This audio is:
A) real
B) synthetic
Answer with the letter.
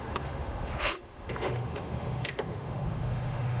B